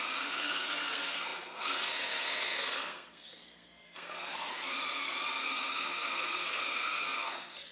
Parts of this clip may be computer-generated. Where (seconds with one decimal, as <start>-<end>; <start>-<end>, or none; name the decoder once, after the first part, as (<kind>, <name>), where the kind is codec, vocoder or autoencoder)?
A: 0.0-4.5 (codec, SNAC); 5.4-7.7